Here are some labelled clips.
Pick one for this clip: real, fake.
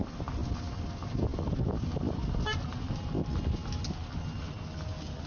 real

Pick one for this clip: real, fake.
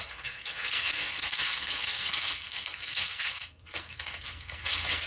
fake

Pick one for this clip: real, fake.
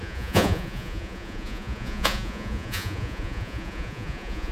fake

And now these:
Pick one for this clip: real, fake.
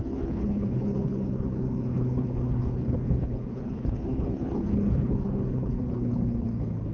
fake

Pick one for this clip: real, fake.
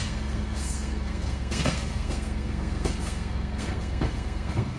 fake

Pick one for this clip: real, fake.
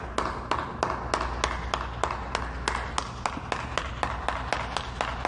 real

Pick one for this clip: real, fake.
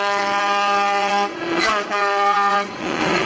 fake